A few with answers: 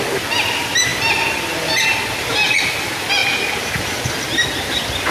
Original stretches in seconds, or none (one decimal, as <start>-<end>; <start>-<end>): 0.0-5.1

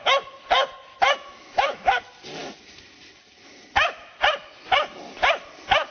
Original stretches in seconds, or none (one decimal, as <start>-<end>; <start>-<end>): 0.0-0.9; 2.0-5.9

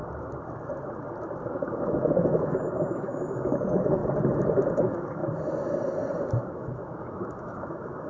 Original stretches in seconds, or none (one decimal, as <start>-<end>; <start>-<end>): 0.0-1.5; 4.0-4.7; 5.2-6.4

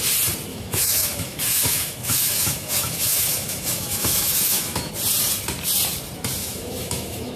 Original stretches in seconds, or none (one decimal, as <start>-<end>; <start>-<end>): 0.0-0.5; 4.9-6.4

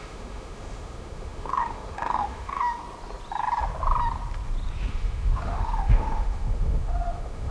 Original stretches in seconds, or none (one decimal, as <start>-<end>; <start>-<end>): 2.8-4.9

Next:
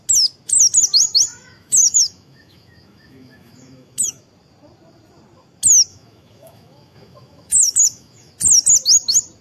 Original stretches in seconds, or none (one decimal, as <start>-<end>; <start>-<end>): 0.0-1.3; 4.2-5.9; 8.3-9.4

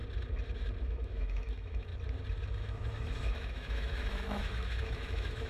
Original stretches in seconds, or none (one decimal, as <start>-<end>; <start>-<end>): 0.0-0.8; 1.9-2.5